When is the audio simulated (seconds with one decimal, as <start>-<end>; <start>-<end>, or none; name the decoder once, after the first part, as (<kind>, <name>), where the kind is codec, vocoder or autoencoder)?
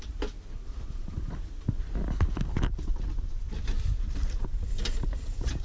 none